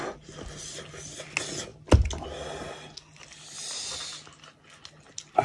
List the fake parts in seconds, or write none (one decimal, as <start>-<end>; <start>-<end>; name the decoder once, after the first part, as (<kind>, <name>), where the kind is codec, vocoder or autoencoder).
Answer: none